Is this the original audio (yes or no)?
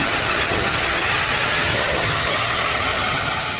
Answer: no